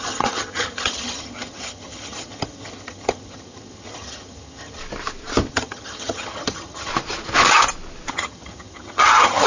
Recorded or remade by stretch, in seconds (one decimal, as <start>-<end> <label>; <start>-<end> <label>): 0.0-4.8 remade; 4.8-5.5 recorded; 5.5-6.9 remade; 6.9-8.1 recorded; 8.1-9.5 remade